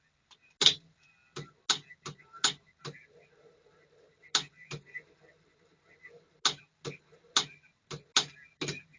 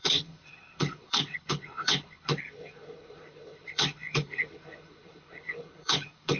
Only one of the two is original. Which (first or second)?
first